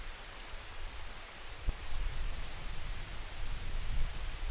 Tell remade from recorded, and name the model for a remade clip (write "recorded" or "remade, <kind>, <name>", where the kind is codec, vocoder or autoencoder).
recorded